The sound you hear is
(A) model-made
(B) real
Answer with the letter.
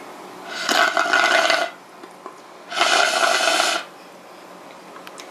B